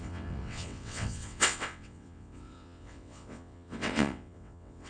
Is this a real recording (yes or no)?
no